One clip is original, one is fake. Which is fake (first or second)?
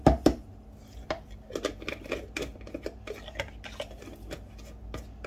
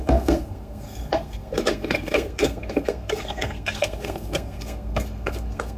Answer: second